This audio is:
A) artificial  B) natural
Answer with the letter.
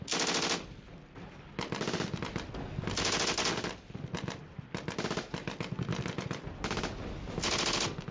B